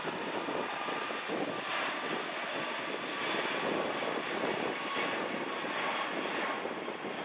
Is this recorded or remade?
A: recorded